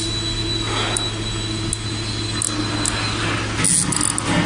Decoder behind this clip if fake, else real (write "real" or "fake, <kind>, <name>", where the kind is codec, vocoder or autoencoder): real